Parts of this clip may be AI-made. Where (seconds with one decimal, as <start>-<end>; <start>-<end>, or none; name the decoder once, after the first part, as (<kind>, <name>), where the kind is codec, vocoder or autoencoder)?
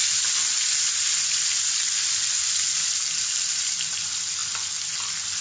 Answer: none